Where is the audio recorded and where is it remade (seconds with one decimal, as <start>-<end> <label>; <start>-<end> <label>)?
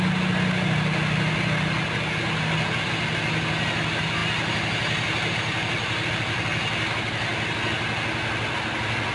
0.0-9.1 recorded